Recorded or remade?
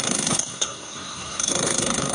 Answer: remade